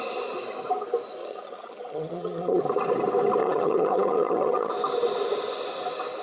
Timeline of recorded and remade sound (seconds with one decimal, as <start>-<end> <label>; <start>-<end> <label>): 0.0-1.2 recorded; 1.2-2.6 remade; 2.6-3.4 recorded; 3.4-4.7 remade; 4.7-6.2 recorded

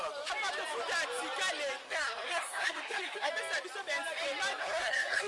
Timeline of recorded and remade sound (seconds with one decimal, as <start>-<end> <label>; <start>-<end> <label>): 0.0-1.8 recorded; 1.8-3.3 remade; 3.3-4.6 recorded; 4.6-5.3 remade

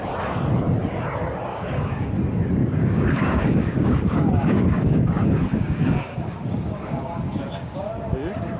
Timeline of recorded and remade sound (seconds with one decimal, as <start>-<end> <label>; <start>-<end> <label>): 0.0-1.5 recorded; 1.5-2.1 remade; 2.1-2.6 recorded; 2.6-7.8 remade; 7.8-8.6 recorded